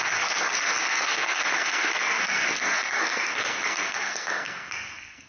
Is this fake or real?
fake